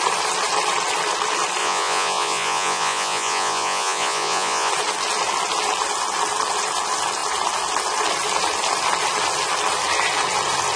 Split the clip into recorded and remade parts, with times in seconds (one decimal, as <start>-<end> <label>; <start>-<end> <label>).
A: 0.0-1.6 recorded; 1.6-4.7 remade; 4.7-10.8 recorded